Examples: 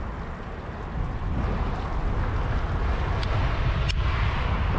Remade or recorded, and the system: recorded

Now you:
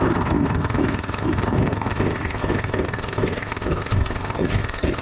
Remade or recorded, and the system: remade, codec, ZipCodec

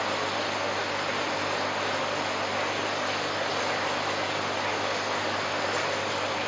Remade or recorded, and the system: recorded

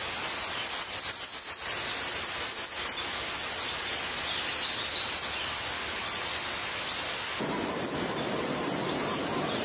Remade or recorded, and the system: recorded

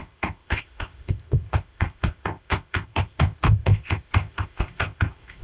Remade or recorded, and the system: remade, codec, ZipCodec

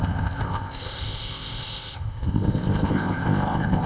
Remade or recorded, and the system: remade, codec, ZipCodec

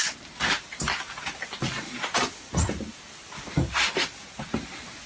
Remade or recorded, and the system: recorded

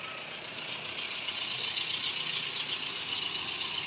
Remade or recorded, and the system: recorded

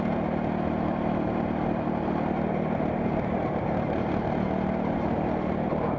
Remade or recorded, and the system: recorded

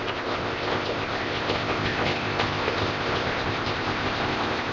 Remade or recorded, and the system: remade, codec, ZipCodec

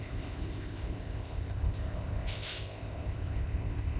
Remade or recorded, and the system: remade, codec, ZipCodec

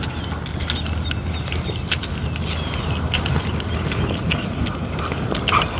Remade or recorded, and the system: recorded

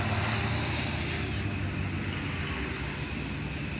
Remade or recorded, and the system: recorded